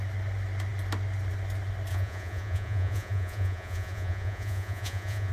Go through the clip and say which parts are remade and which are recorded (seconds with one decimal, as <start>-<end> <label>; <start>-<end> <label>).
0.0-1.9 recorded; 1.9-5.3 remade